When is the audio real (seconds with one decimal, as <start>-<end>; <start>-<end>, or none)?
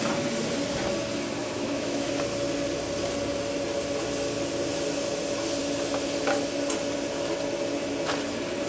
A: 0.0-1.4; 2.1-8.7